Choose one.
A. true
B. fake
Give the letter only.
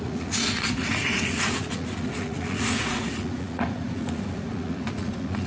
B